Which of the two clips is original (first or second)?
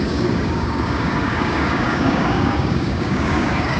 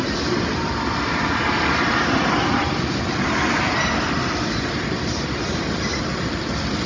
second